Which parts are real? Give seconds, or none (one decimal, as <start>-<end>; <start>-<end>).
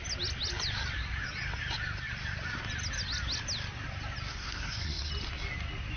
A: 0.0-4.3; 5.1-6.0